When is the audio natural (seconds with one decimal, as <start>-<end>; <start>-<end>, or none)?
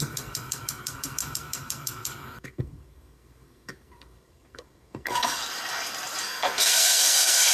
5.4-6.2